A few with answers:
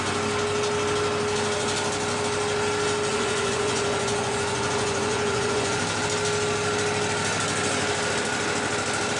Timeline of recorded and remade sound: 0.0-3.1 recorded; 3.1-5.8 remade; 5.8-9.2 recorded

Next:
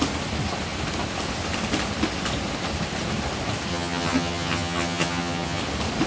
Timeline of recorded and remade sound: 0.0-3.7 recorded; 3.7-5.6 remade; 5.6-6.1 recorded

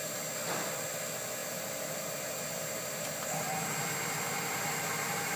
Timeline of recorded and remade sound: 0.0-1.4 recorded; 1.4-4.6 remade; 4.6-5.4 recorded

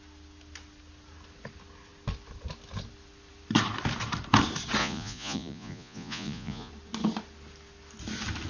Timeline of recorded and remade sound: 0.0-4.8 recorded; 4.8-6.7 remade; 6.7-8.5 recorded

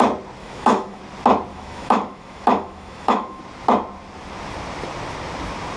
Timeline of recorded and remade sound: 0.0-0.4 recorded; 0.4-1.0 remade; 1.0-1.5 recorded; 1.5-3.4 remade; 3.4-5.8 recorded

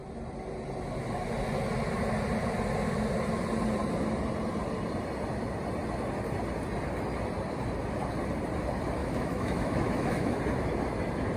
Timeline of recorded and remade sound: 0.0-9.0 recorded; 9.0-10.4 remade; 10.4-11.4 recorded

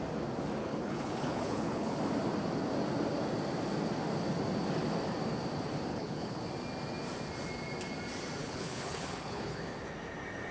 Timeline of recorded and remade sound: 0.0-0.6 recorded; 0.6-2.0 remade; 2.0-5.9 recorded; 5.9-6.4 remade; 6.4-8.4 recorded; 8.4-9.6 remade; 9.6-10.5 recorded